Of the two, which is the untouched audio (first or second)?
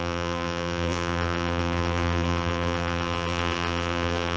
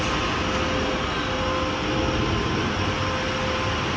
second